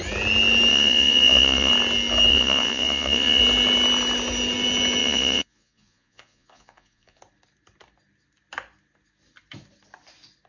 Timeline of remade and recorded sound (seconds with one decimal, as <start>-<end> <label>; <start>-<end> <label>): 0.0-0.7 recorded; 0.7-1.7 remade; 1.7-2.3 recorded; 2.3-3.4 remade; 3.4-5.0 recorded; 5.0-7.2 remade; 7.2-10.5 recorded